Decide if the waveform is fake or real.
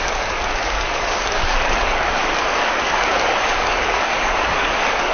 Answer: fake